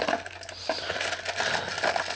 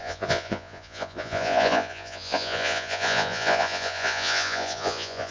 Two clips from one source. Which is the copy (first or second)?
second